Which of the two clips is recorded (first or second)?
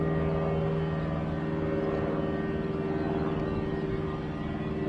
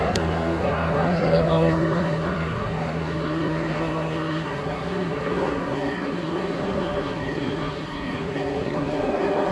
first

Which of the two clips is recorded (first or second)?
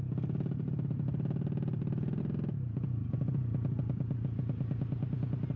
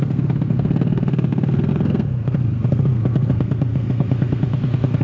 first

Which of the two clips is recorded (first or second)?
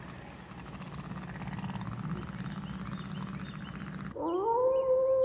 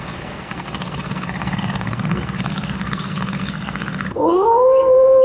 first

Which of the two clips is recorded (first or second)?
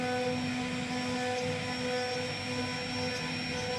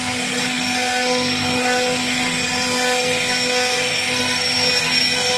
first